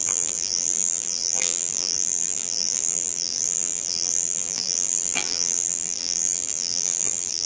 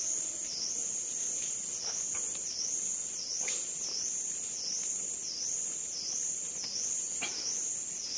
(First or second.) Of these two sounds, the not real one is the first